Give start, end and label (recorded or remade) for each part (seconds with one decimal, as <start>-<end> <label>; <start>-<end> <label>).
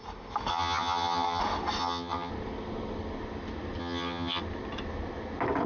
0.0-0.5 recorded; 0.5-1.4 remade; 1.4-1.8 recorded; 1.8-2.3 remade; 2.3-3.8 recorded; 3.8-4.4 remade; 4.4-5.7 recorded